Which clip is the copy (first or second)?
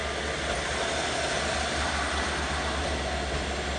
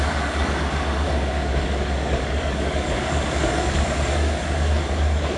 second